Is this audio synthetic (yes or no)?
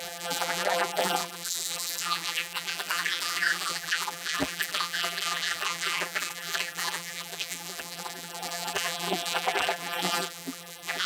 yes